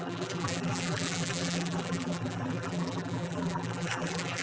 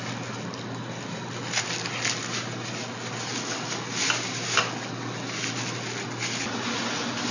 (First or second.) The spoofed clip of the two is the first